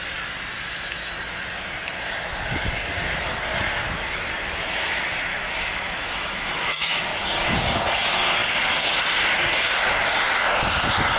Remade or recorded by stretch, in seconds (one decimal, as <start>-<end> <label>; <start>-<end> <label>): 0.0-0.5 recorded; 0.5-1.1 remade; 1.1-5.3 recorded; 5.3-7.0 remade; 7.0-11.2 recorded